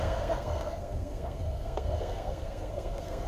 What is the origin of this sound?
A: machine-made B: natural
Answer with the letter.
A